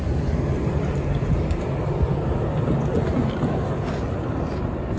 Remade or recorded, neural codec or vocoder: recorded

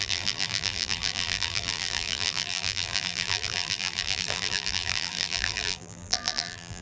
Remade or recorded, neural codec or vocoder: remade, vocoder, BigVGAN v2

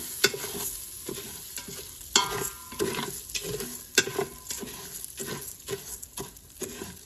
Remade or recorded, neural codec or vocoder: recorded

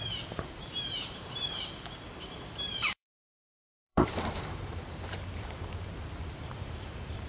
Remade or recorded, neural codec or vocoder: remade, vocoder, BigVGAN v2